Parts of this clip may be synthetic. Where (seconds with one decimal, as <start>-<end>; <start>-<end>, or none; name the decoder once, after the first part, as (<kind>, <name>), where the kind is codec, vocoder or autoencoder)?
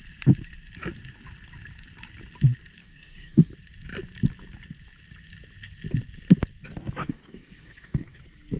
2.8-3.5 (codec, DAC); 7.0-8.2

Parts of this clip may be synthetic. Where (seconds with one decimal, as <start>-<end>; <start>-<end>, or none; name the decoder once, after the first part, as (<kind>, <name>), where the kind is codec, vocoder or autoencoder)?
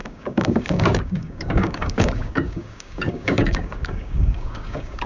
0.0-5.1 (codec, DAC)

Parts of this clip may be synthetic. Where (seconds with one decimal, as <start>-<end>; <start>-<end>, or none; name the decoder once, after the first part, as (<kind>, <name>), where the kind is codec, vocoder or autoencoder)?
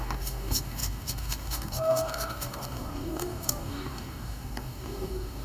0.0-5.4 (codec, DAC)